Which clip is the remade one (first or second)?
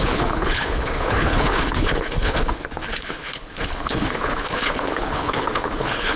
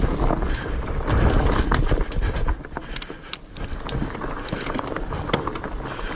first